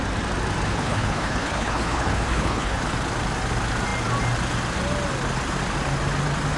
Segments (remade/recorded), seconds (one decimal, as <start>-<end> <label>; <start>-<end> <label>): 0.0-0.7 recorded; 0.7-2.8 remade; 2.8-6.6 recorded